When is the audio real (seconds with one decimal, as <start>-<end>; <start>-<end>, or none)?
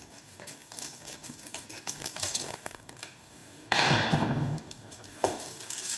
none